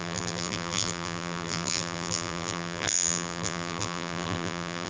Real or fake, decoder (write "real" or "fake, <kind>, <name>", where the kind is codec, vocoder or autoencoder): fake, vocoder, BigVGAN v2